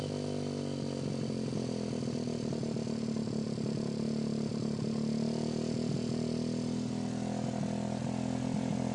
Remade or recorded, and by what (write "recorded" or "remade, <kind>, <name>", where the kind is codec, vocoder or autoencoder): recorded